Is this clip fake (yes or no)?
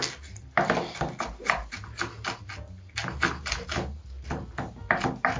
no